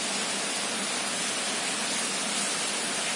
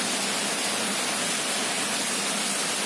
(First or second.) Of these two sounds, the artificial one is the first